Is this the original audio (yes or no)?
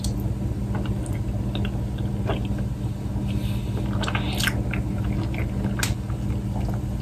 yes